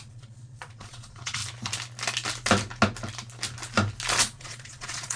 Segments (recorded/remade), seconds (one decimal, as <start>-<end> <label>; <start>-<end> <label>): 0.0-1.4 remade; 1.4-4.2 recorded; 4.2-5.2 remade